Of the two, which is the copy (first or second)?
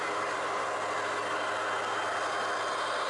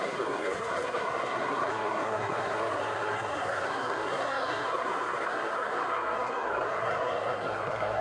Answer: second